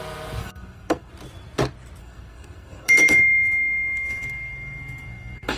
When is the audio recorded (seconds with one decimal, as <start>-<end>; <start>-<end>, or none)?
0.0-0.4; 1.1-2.0